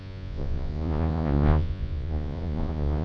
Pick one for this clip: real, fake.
fake